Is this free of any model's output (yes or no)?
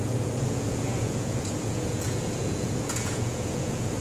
no